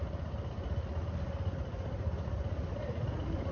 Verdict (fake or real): real